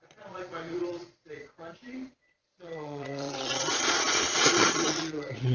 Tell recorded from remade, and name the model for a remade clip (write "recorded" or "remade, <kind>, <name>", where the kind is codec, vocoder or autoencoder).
remade, vocoder, Vocos